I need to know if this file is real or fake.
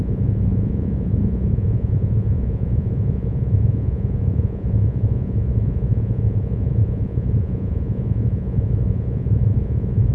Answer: fake